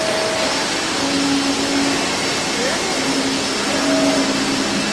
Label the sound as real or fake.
real